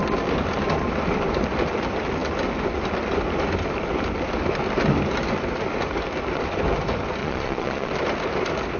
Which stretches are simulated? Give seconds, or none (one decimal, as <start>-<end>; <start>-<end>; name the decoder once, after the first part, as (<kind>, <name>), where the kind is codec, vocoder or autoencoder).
7.2-7.9 (vocoder, Vocos)

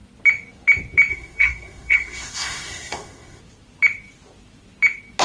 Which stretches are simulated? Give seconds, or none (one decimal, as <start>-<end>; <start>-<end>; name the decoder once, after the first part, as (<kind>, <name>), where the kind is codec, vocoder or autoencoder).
1.1-3.4 (codec, SNAC)

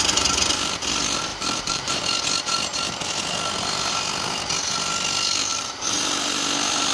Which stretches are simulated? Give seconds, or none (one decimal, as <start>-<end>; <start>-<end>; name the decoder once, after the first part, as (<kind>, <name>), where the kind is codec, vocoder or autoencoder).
1.3-2.0 (vocoder, BigVGAN v2); 5.5-6.0